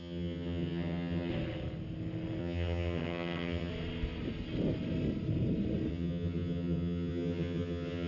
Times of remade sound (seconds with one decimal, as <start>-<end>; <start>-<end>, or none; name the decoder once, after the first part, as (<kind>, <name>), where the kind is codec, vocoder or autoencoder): 0.0-1.3 (vocoder, HiFi-GAN); 2.4-3.7; 5.9-8.1